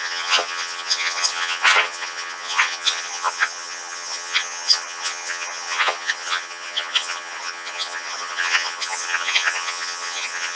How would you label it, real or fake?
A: fake